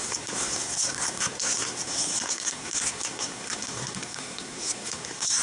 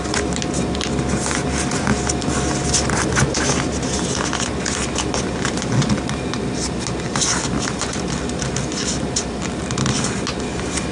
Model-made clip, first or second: first